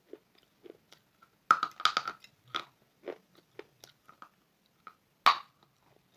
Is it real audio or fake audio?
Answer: real